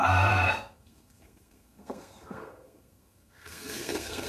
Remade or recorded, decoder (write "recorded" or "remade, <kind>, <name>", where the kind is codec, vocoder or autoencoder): remade, codec, SNAC